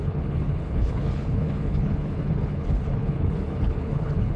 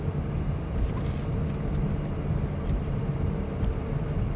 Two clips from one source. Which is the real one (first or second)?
second